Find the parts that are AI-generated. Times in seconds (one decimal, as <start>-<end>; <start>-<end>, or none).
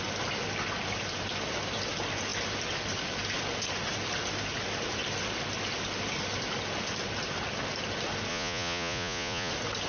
8.3-9.5